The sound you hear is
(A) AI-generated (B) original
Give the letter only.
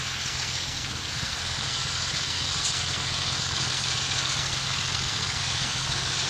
A